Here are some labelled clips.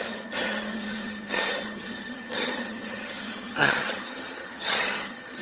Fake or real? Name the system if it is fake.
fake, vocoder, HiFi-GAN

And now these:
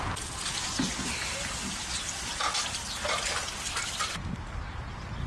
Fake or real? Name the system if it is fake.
real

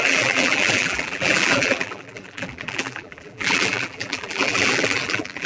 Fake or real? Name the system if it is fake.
fake, vocoder, BigVGAN v2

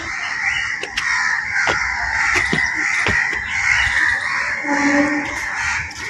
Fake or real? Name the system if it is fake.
real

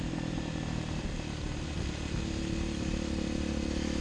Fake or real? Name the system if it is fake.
real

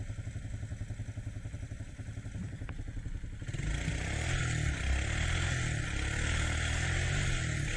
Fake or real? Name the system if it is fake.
real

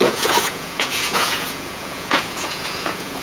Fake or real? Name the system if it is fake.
fake, vocoder, Vocos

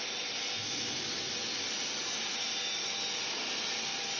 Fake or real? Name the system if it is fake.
real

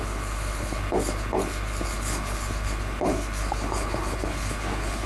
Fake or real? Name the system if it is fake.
fake, codec, HILCodec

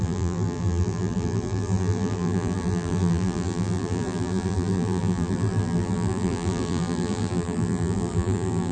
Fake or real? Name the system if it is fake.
fake, vocoder, BigVGAN v2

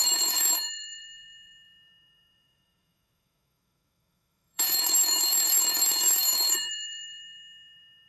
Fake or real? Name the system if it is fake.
fake, autoencoder, DAC-VAE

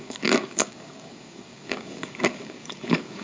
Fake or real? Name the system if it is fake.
fake, codec, DAC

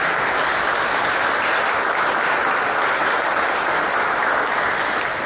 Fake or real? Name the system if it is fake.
real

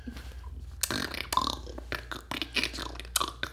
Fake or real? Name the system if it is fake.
real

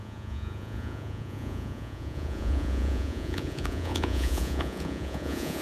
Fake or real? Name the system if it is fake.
fake, vocoder, Vocos